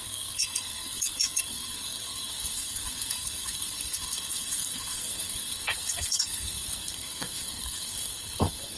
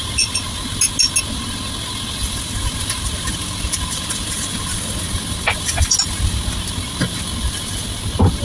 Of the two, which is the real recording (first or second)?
second